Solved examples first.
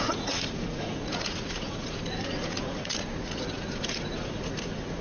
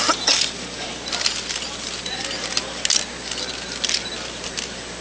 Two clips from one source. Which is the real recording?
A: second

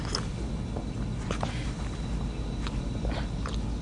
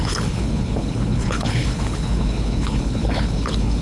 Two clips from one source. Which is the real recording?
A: first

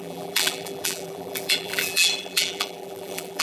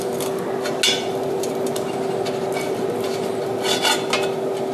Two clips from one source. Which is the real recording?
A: second